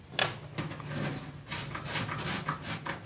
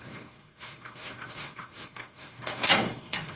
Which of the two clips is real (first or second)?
first